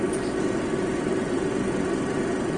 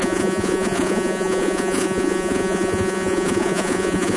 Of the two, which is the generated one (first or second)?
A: second